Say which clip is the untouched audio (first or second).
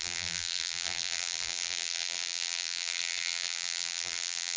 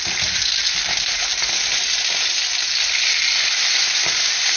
second